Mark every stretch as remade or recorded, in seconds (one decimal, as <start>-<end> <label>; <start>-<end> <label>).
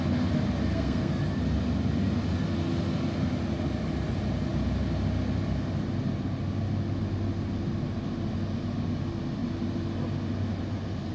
0.0-0.7 recorded; 0.7-1.2 remade; 1.2-11.1 recorded